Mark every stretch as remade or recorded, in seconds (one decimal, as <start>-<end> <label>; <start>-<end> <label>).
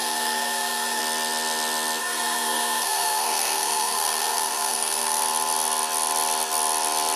0.0-1.0 remade; 1.0-2.0 recorded; 2.0-5.2 remade; 5.2-7.2 recorded